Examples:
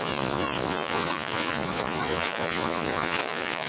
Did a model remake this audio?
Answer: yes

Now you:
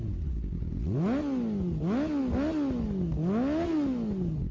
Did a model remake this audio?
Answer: no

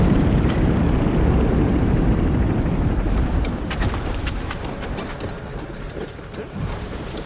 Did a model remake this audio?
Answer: yes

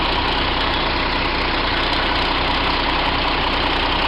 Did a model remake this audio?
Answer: no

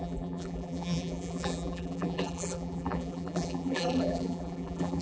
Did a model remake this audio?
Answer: yes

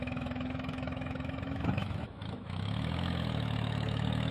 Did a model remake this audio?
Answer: yes